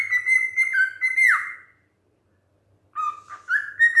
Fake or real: real